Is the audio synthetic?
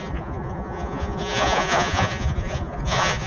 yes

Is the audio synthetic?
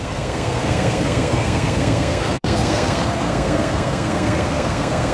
yes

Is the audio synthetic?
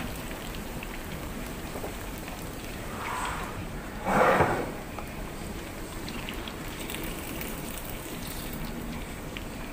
yes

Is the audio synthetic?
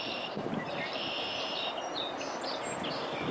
yes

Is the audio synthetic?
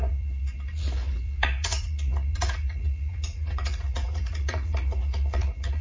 yes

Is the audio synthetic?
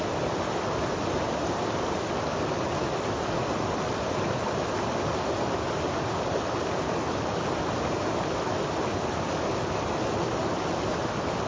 no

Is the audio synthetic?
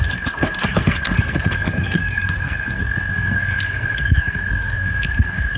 yes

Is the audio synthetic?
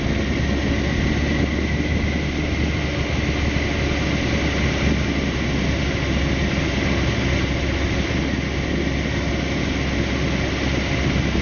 no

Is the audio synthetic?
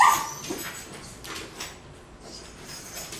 no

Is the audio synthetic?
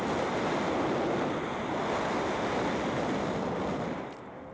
no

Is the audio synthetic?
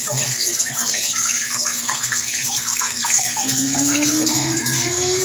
yes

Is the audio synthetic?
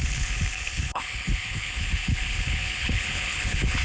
yes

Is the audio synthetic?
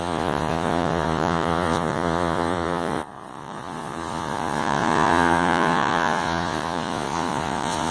yes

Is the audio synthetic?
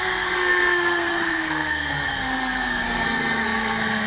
yes